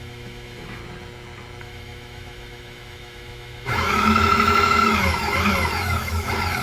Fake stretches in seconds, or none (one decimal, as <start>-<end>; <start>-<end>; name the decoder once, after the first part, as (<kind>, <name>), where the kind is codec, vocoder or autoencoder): 0.0-0.8 (autoencoder, DAC-VAE); 1.6-6.6